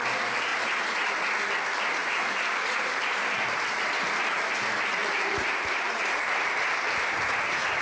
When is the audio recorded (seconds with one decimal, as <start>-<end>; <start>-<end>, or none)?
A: 0.0-0.5; 1.2-2.0; 3.6-5.0; 6.1-7.8